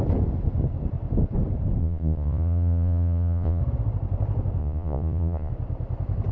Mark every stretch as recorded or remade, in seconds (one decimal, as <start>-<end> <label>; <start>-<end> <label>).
0.0-1.8 recorded; 1.8-3.6 remade; 3.6-4.6 recorded; 4.6-5.5 remade; 5.5-6.3 recorded